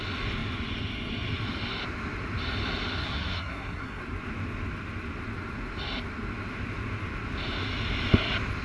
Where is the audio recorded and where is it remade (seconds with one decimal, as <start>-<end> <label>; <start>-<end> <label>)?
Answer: 0.0-3.0 recorded; 3.0-4.0 remade; 4.0-8.6 recorded